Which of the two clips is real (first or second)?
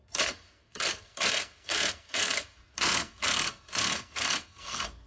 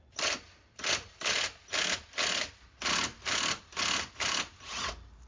second